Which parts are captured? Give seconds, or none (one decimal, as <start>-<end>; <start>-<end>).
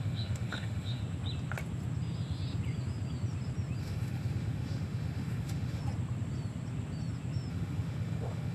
1.0-3.8; 5.8-7.5